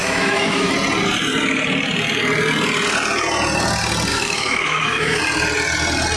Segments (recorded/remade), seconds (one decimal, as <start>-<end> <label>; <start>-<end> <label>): 0.0-0.7 remade; 0.7-4.1 recorded; 4.1-5.2 remade; 5.2-6.2 recorded